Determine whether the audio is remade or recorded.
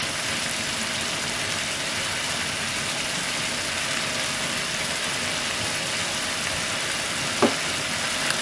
recorded